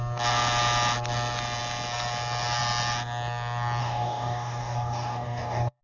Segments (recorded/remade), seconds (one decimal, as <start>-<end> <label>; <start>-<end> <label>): 0.0-3.8 recorded; 3.8-5.8 remade

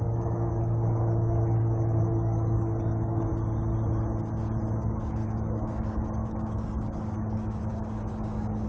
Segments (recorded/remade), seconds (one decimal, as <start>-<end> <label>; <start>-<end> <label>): 0.0-3.3 remade; 3.3-4.8 recorded; 4.8-8.7 remade

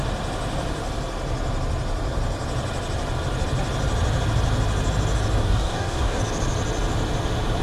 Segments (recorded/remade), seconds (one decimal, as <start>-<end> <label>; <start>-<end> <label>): 0.0-5.4 recorded; 5.4-6.2 remade; 6.2-7.6 recorded

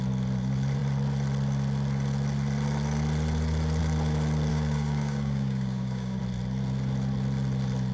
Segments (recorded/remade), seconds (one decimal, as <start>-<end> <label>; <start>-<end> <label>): 0.0-4.5 recorded; 4.5-6.2 remade; 6.2-7.9 recorded